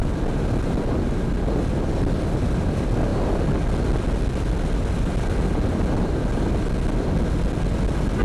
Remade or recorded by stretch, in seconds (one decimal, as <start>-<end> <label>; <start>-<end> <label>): 0.0-8.2 recorded

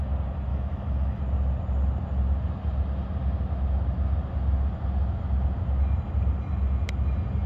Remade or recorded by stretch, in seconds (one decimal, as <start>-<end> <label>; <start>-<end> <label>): 0.0-0.5 recorded; 0.5-1.2 remade; 1.2-7.5 recorded

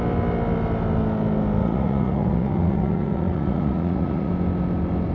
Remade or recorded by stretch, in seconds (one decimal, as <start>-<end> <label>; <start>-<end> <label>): 0.0-1.6 recorded; 1.6-4.3 remade; 4.3-5.1 recorded

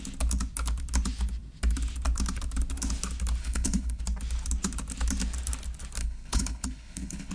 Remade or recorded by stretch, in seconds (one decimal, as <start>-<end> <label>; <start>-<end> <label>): 0.0-3.4 recorded; 3.4-4.0 remade; 4.0-6.0 recorded; 6.0-7.3 remade

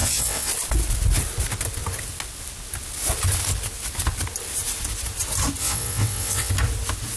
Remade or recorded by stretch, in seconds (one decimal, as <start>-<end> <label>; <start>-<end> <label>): 0.0-0.5 remade; 0.5-5.6 recorded; 5.6-6.5 remade; 6.5-7.2 recorded

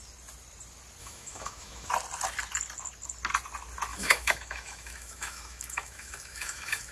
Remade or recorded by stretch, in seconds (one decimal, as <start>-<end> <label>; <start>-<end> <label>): 0.0-1.0 recorded; 1.0-1.9 remade; 1.9-3.9 recorded; 3.9-6.9 remade

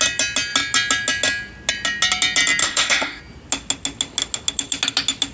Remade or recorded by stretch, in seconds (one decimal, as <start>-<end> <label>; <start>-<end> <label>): 0.0-2.6 recorded; 2.6-3.2 remade; 3.2-5.3 recorded

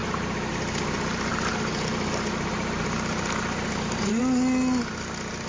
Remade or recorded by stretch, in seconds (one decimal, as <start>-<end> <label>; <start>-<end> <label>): 0.0-0.5 remade; 0.5-1.3 recorded; 1.3-4.2 remade; 4.2-5.5 recorded